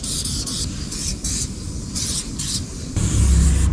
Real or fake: real